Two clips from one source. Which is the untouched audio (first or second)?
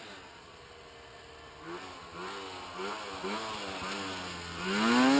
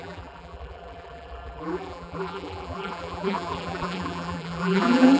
first